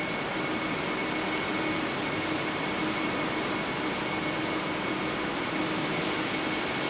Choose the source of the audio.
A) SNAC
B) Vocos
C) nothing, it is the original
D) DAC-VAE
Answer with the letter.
C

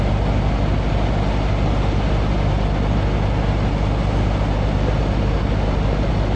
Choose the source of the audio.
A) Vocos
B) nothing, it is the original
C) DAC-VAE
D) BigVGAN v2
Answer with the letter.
B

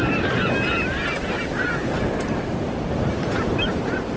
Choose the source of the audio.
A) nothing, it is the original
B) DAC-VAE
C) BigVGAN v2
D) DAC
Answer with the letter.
A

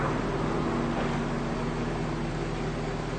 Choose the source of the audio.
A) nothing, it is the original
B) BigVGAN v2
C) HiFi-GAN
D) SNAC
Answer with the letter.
A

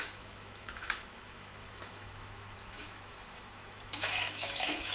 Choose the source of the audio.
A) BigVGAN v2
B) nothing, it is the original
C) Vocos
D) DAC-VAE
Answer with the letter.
D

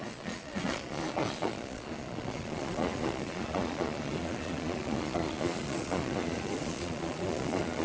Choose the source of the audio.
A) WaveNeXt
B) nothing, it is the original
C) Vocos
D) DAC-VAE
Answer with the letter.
C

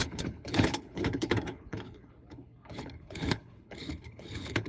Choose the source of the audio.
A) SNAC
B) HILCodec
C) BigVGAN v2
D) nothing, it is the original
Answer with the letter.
B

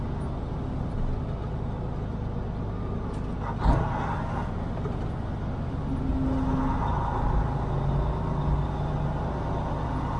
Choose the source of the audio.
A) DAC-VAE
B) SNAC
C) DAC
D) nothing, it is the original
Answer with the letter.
D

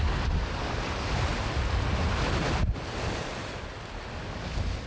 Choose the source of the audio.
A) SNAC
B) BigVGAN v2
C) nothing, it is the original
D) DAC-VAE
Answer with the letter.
C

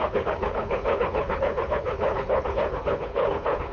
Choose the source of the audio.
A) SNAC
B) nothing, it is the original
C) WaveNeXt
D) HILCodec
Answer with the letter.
D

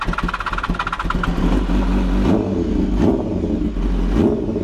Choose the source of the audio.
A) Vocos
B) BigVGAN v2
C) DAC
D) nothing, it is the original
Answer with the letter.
D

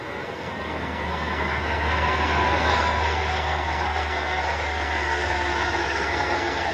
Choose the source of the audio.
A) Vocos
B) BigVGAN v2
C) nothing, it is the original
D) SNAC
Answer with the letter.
D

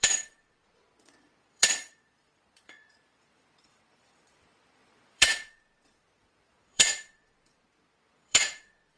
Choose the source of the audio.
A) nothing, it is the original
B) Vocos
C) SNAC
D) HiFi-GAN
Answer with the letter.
B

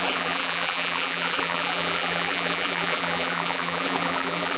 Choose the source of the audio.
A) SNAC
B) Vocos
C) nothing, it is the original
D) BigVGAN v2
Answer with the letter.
D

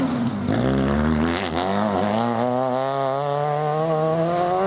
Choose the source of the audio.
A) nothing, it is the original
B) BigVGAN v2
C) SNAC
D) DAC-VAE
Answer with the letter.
A